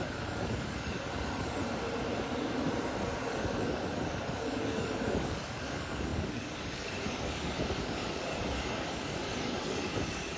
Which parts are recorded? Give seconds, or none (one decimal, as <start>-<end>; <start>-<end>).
1.6-3.3